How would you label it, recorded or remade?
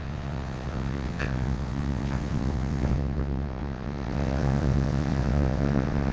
remade